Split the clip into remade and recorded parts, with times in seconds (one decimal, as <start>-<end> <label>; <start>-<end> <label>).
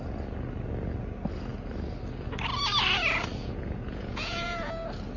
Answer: 0.0-3.4 recorded; 3.4-4.7 remade; 4.7-5.2 recorded